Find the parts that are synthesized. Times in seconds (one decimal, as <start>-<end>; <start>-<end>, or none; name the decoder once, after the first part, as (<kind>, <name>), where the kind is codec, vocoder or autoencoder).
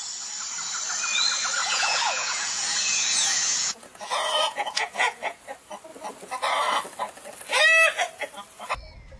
1.6-5.4 (vocoder, Vocos)